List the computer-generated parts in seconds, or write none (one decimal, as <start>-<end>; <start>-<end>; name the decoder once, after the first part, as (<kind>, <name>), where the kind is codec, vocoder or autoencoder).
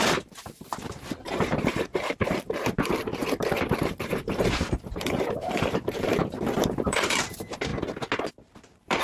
0.0-6.2 (vocoder, BigVGAN v2); 6.9-7.7; 8.3-9.0